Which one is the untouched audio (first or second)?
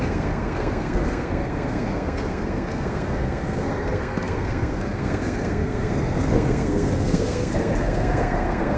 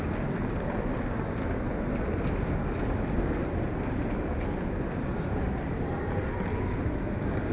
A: second